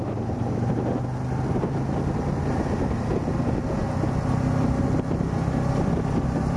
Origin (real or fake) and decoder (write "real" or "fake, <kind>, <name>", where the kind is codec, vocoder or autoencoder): real